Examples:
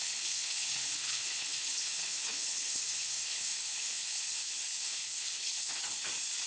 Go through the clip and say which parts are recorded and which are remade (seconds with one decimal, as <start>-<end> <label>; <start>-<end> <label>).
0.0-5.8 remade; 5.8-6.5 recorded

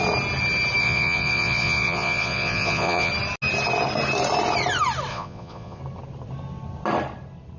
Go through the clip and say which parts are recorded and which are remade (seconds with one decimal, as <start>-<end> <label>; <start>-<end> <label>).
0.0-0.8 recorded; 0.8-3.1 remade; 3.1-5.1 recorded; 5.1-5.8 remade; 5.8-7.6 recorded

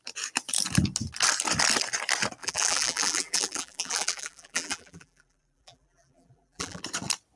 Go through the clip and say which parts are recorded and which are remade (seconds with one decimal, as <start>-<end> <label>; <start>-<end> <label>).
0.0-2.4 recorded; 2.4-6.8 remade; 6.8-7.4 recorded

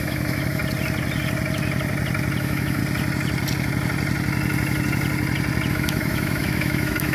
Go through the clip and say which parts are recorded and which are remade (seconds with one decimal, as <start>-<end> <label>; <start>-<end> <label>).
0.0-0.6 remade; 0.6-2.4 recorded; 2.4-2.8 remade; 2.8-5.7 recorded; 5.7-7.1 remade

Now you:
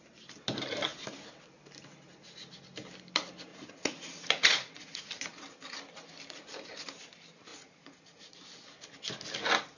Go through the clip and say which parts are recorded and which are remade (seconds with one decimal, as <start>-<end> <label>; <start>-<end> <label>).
0.0-3.5 recorded; 3.5-5.1 remade; 5.1-7.5 recorded; 7.5-8.2 remade; 8.2-9.8 recorded

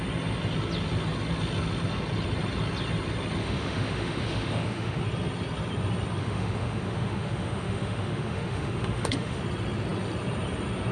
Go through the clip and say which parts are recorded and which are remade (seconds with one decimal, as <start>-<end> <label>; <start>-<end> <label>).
0.0-3.4 recorded; 3.4-5.0 remade; 5.0-6.2 recorded; 6.2-9.4 remade; 9.4-10.9 recorded

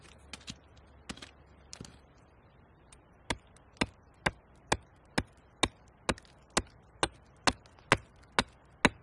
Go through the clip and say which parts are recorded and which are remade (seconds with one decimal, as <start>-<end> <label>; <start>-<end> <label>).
0.0-9.0 recorded

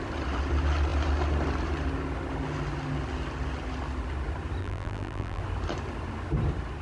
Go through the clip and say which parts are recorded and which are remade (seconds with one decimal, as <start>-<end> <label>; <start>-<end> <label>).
0.0-4.6 recorded; 4.6-5.4 remade; 5.4-6.8 recorded